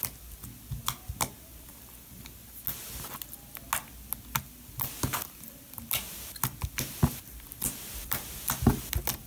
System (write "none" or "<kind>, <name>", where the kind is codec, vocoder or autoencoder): none